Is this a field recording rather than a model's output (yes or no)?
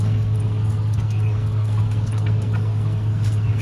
no